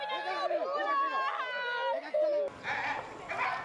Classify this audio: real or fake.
real